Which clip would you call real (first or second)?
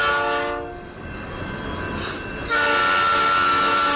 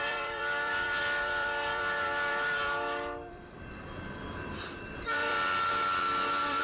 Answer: first